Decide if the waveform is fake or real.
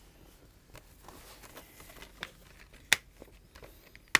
real